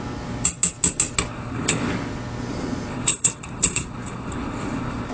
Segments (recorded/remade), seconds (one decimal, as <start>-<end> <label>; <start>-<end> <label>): 0.0-1.3 recorded; 1.3-1.9 remade; 1.9-2.9 recorded; 2.9-5.1 remade

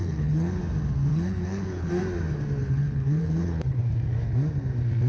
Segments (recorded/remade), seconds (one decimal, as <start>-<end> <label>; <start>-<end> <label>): 0.0-0.6 remade; 0.6-1.1 recorded; 1.1-1.9 remade; 1.9-2.6 recorded; 2.6-3.8 remade; 3.8-5.1 recorded

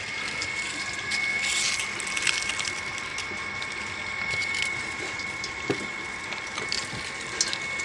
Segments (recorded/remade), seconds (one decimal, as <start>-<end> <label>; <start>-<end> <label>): 0.0-7.8 recorded

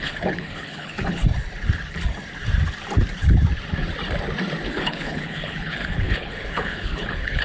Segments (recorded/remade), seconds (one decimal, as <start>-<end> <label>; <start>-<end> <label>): 0.0-1.2 remade; 1.2-4.7 recorded; 4.7-7.4 remade

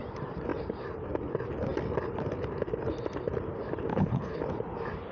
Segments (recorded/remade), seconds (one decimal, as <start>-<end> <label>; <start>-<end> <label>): 0.0-3.9 recorded; 3.9-4.4 remade; 4.4-5.1 recorded

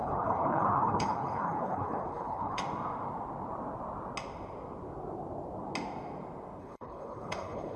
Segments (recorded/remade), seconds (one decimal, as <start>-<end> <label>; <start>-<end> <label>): 0.0-2.6 remade; 2.6-6.6 recorded; 6.6-7.8 remade

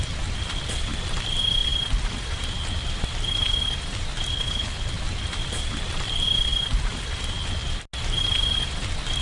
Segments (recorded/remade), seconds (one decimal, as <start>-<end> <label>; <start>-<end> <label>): 0.0-4.3 recorded; 4.3-4.9 remade; 4.9-9.2 recorded